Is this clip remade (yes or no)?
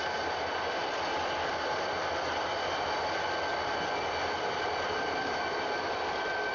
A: no